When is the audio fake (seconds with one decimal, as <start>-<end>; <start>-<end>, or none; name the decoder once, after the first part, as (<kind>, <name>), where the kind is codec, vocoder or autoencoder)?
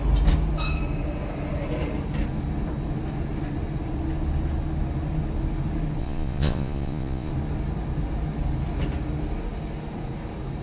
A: 6.0-7.3 (vocoder, Vocos)